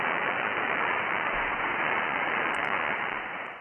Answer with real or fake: fake